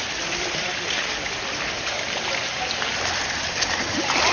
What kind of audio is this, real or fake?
real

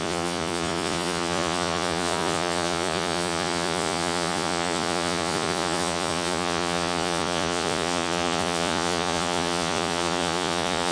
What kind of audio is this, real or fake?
fake